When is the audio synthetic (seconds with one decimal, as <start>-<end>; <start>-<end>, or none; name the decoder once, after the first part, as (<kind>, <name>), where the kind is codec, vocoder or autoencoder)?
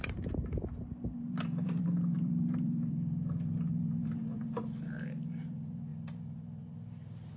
0.0-7.4 (vocoder, BigVGAN v2)